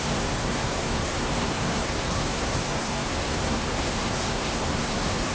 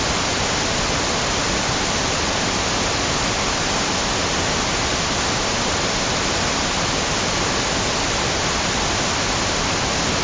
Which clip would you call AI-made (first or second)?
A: first